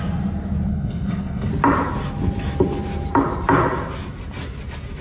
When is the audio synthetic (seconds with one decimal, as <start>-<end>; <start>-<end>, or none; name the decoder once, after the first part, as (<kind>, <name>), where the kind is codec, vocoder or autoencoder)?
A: 0.7-1.5 (codec, SNAC)